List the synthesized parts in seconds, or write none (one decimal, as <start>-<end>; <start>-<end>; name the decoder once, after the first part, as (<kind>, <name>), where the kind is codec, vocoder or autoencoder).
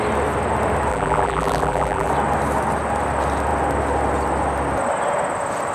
0.9-2.1 (vocoder, BigVGAN v2)